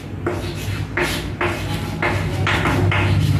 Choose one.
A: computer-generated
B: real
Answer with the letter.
B